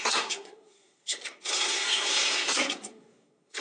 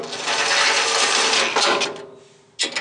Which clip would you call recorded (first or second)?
second